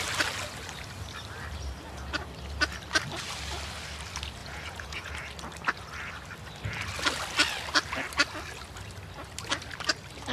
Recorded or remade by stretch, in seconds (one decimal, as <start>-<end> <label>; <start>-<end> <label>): 0.0-4.4 recorded; 4.4-5.1 remade; 5.1-10.3 recorded